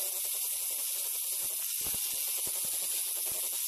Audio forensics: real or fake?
real